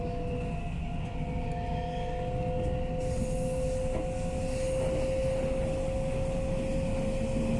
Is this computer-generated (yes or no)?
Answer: no